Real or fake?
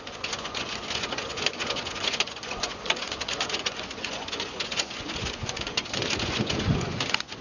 fake